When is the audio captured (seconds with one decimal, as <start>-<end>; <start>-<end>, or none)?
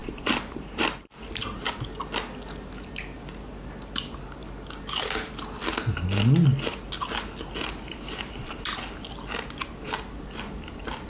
1.3-11.1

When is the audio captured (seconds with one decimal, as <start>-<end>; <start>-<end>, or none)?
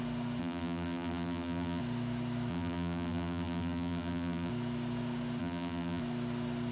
0.0-0.4; 1.8-2.5; 4.5-5.4; 6.0-6.7